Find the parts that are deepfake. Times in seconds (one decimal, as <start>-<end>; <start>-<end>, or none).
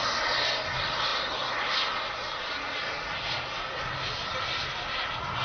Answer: none